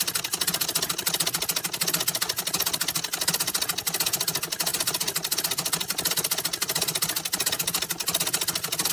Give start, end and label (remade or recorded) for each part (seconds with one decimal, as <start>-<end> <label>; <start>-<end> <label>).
0.0-8.9 recorded